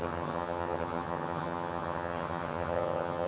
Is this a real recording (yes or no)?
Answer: no